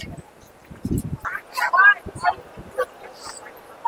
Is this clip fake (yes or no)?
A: no